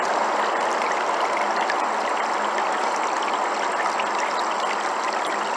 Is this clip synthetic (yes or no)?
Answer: no